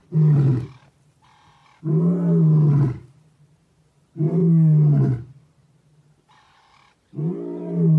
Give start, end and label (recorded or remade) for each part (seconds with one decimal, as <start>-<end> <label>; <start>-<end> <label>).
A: 0.0-8.0 recorded